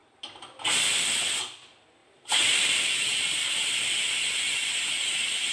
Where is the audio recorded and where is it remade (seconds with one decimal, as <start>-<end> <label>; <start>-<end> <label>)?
0.0-2.0 recorded; 2.0-4.1 remade; 4.1-5.5 recorded